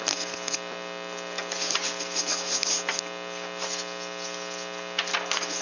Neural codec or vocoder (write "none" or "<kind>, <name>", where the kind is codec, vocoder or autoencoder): none